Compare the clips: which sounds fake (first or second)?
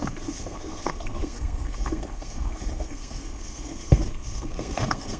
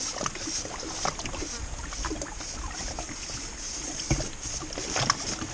first